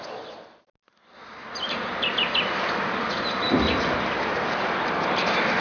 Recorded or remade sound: recorded